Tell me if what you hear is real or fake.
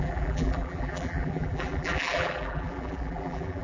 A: fake